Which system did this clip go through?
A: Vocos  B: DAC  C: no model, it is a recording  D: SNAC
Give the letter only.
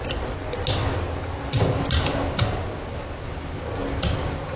C